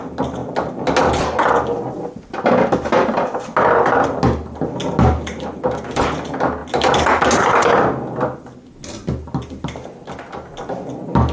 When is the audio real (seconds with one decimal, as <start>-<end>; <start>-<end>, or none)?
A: 0.0-11.3